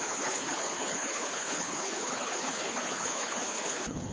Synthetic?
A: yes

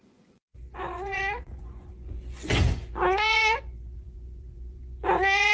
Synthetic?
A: yes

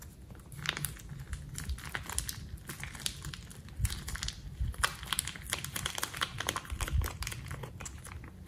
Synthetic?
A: no